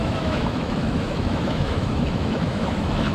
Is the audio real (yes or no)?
no